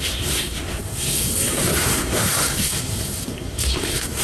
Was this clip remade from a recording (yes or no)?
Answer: yes